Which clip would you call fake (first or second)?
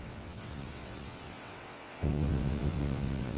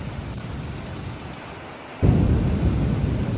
first